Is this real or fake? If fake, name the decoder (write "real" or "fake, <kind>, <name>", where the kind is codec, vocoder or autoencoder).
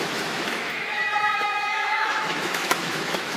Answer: fake, autoencoder, DAC-VAE